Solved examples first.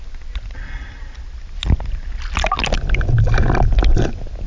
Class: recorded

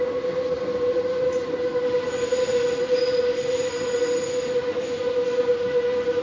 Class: recorded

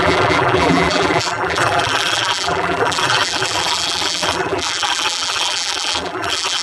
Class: remade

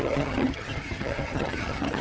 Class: remade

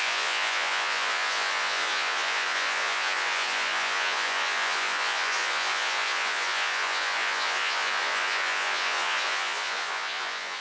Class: remade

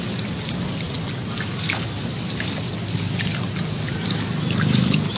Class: recorded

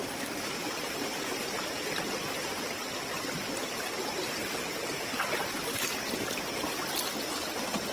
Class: recorded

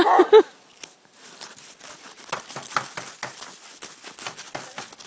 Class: recorded